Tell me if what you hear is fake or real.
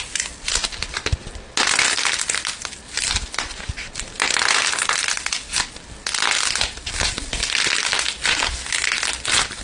real